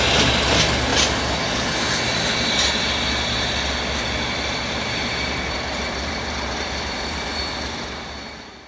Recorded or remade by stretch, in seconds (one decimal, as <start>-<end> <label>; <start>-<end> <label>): 0.0-4.6 recorded; 4.6-7.4 remade; 7.4-8.7 recorded